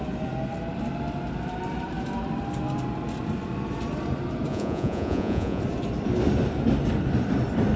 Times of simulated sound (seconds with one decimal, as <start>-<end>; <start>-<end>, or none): 4.5-5.6